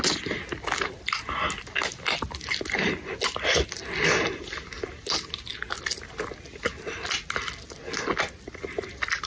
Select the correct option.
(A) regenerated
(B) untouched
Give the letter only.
B